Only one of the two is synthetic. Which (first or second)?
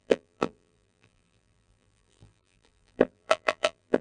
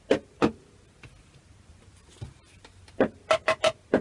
first